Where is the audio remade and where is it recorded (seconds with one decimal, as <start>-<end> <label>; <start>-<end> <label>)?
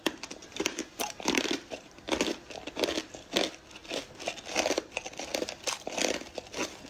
0.0-0.4 recorded; 0.4-2.5 remade; 2.5-6.9 recorded